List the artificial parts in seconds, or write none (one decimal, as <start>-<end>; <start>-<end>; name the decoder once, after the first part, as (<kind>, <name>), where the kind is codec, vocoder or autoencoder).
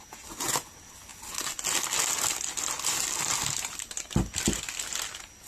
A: none